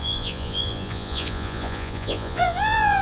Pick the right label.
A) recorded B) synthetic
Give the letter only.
B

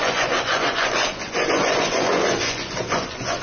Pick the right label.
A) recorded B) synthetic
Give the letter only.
B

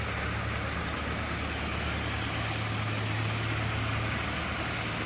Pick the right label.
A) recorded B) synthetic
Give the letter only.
A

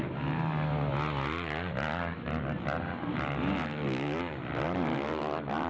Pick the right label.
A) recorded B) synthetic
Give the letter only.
A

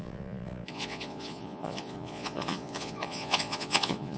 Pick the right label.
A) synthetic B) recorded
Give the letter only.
A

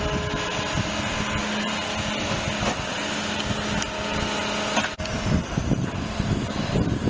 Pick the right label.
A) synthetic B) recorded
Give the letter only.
B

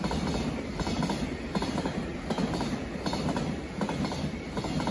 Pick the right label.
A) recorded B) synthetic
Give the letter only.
A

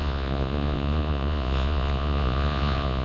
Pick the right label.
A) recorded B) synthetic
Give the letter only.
B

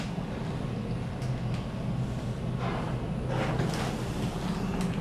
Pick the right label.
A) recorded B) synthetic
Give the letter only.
A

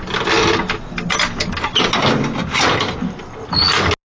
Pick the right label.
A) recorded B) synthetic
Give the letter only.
A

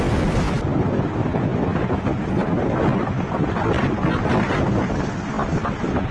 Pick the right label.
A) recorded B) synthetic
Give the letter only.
A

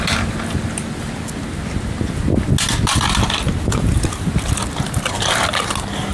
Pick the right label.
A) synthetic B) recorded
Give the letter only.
B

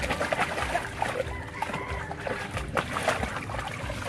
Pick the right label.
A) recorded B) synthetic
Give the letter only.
A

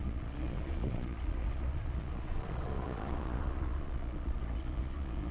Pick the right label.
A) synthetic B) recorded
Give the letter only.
A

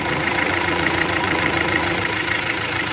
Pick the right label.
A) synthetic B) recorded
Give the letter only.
A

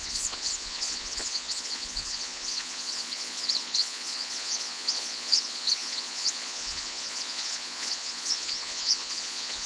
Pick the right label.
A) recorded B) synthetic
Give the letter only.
B